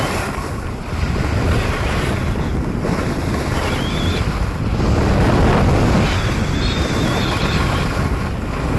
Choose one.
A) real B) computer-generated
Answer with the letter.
A